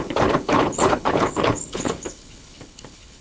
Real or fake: fake